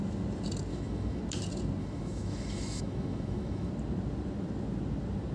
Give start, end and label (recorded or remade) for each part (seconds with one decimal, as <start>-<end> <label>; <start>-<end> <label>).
0.0-0.7 recorded; 0.7-1.2 remade; 1.2-1.8 recorded; 1.8-3.7 remade; 3.7-5.3 recorded